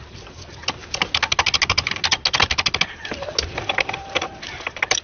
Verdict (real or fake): real